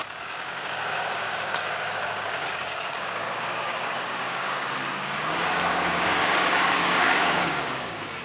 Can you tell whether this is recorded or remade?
remade